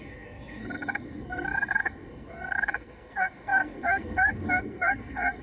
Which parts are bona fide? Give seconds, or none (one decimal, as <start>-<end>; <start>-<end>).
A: none